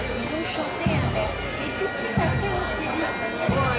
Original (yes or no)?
yes